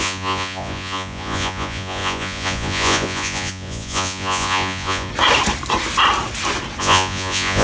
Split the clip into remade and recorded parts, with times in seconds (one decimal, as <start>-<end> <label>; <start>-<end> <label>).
0.0-5.1 remade; 5.1-6.8 recorded; 6.8-7.6 remade